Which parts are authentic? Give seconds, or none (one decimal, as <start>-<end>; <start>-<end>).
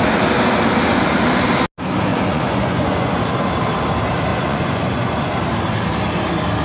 0.0-2.1; 3.2-4.3; 5.3-6.6